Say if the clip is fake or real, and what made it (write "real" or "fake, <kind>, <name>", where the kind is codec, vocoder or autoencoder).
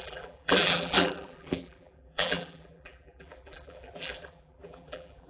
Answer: fake, vocoder, BigVGAN v2